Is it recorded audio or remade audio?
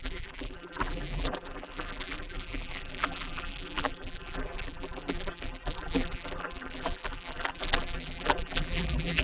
remade